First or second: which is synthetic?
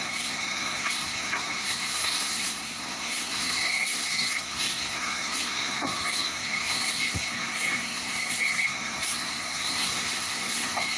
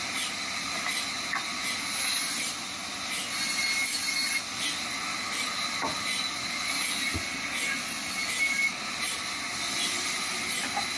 first